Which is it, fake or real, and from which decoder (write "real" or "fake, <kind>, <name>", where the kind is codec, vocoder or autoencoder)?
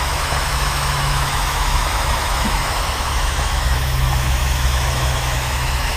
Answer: fake, autoencoder, DAC-VAE